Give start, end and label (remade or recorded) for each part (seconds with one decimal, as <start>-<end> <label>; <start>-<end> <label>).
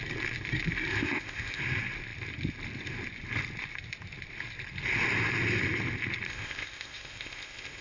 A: 0.0-0.9 recorded; 0.9-1.6 remade; 1.6-6.3 recorded; 6.3-7.8 remade